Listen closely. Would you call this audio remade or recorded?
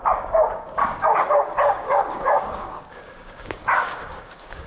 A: remade